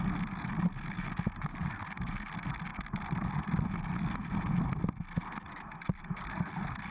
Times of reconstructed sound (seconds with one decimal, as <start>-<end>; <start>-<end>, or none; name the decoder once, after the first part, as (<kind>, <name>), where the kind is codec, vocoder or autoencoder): none